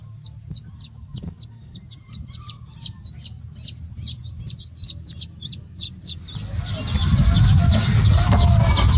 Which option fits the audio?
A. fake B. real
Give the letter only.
B